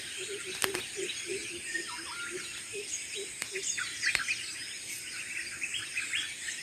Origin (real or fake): real